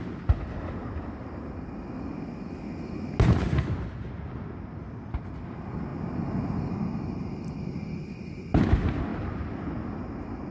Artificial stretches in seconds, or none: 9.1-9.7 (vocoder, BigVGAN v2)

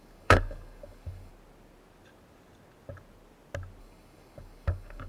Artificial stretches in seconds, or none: 0.0-1.3 (codec, DAC); 3.8-5.1